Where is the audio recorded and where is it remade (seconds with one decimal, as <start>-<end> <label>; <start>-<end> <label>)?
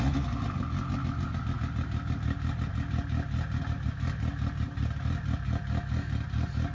0.0-6.7 recorded